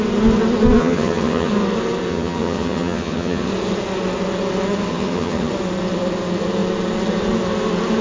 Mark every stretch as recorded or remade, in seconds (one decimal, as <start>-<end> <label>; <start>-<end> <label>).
0.0-0.8 recorded; 0.8-1.5 remade; 1.5-2.1 recorded; 2.1-3.5 remade; 3.5-4.9 recorded; 4.9-5.5 remade; 5.5-8.0 recorded